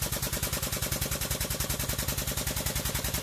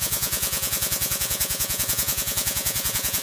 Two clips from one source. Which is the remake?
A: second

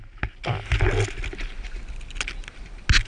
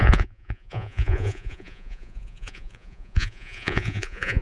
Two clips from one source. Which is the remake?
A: second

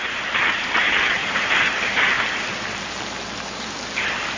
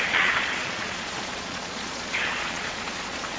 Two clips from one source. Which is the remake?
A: second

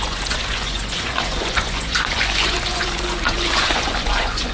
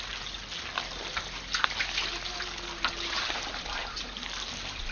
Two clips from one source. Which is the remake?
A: first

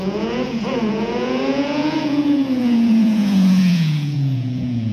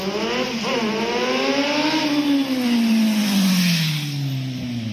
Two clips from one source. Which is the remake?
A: first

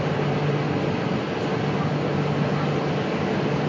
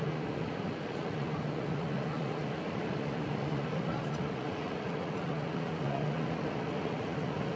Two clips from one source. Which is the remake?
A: second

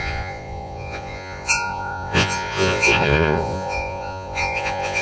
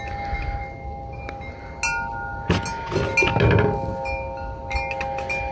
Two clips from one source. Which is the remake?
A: first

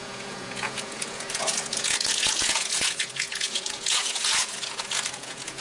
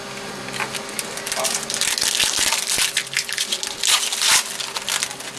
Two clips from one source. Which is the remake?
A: first